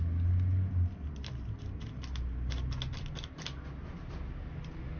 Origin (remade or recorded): recorded